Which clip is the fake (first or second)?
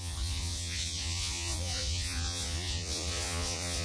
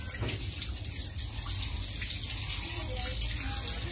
first